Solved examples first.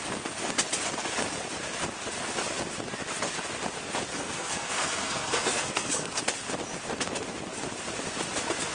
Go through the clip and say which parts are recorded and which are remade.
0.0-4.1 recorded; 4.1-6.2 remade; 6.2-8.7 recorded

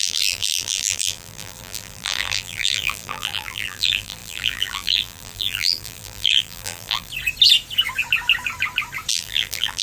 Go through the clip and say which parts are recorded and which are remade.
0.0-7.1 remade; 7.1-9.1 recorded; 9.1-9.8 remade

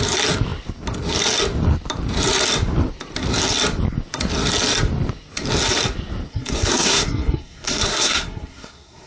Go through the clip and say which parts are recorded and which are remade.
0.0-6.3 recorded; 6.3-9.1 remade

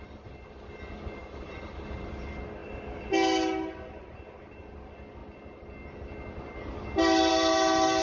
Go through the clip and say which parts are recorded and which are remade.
0.0-1.2 recorded; 1.2-2.1 remade; 2.1-8.0 recorded

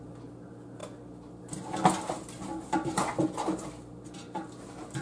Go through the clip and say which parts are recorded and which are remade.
0.0-5.0 recorded

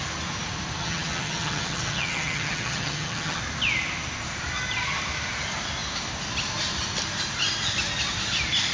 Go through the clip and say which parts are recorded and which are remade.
0.0-0.8 recorded; 0.8-3.4 remade; 3.4-8.7 recorded